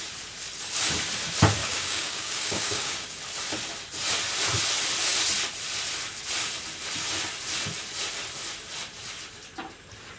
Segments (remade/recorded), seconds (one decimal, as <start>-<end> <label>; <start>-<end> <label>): 0.0-1.6 recorded; 1.6-3.2 remade; 3.2-10.2 recorded